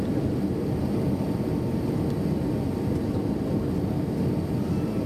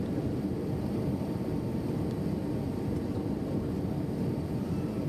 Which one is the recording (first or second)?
first